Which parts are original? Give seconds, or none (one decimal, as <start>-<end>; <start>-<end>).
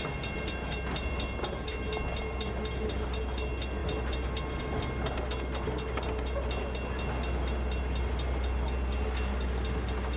0.0-10.2